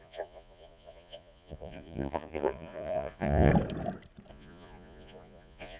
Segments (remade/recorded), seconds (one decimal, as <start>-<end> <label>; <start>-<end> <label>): 0.0-3.5 remade; 3.5-4.3 recorded; 4.3-5.8 remade